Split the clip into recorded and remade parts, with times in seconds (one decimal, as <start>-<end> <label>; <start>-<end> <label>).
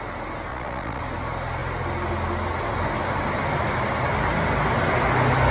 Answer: 0.0-0.5 recorded; 0.5-1.0 remade; 1.0-5.5 recorded